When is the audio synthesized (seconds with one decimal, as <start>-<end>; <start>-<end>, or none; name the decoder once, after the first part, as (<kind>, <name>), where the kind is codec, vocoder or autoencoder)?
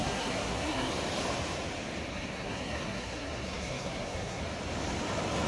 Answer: 0.0-0.9 (codec, SNAC); 2.1-4.4